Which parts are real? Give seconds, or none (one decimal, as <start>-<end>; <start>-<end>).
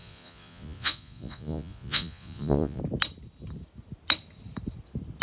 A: 2.8-5.2